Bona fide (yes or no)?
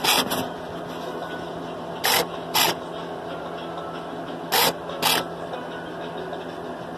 yes